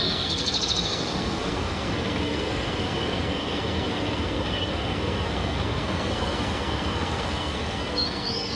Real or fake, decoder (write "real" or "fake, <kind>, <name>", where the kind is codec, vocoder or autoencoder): fake, codec, SNAC